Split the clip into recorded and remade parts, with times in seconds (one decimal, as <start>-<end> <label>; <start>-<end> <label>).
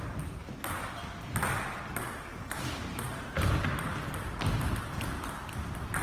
0.0-2.3 recorded; 2.3-3.5 remade; 3.5-6.0 recorded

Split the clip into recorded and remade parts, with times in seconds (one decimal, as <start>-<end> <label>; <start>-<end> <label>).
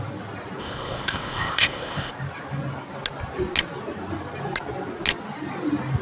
0.0-0.6 recorded; 0.6-2.1 remade; 2.1-6.0 recorded